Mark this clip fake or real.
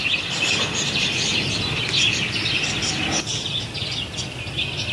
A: real